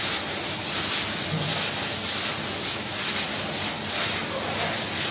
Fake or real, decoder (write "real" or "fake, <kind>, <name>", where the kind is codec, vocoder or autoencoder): real